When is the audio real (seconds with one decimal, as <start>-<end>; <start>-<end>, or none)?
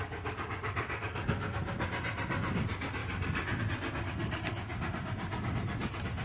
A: 0.0-6.2